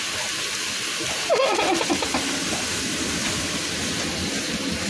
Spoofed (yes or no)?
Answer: no